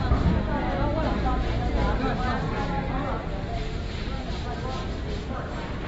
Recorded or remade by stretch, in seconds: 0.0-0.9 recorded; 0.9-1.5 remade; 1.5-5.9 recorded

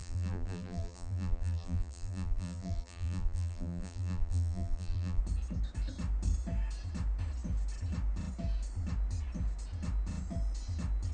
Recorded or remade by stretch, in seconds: 0.0-5.2 remade; 5.2-11.1 recorded

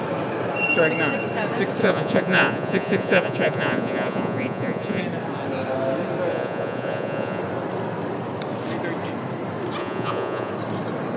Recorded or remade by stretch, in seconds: 0.0-1.8 recorded; 1.8-5.0 remade; 5.0-6.3 recorded; 6.3-7.4 remade; 7.4-9.8 recorded; 9.8-10.5 remade; 10.5-11.2 recorded

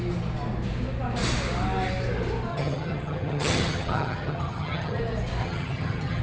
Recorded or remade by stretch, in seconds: 0.0-2.5 recorded; 2.5-5.0 remade; 5.0-5.4 recorded; 5.4-6.2 remade